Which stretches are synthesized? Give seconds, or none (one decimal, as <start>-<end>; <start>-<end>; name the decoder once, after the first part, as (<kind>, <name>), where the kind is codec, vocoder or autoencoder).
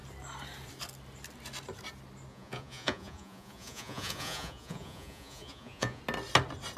2.3-6.0 (vocoder, Vocos)